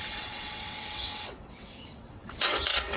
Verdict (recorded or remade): remade